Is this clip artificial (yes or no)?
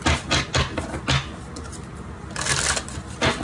no